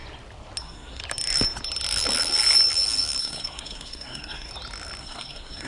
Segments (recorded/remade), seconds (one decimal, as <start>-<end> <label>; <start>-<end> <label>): 0.0-0.6 recorded; 0.6-1.0 remade; 1.0-3.2 recorded; 3.2-4.5 remade; 4.5-5.0 recorded; 5.0-5.7 remade